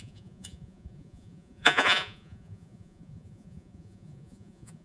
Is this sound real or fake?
fake